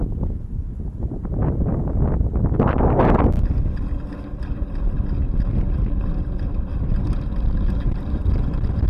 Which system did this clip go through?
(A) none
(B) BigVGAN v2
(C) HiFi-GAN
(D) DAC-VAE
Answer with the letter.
A